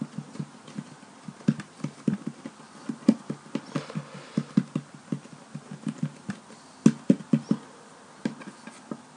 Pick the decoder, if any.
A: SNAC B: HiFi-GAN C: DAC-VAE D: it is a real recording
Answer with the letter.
D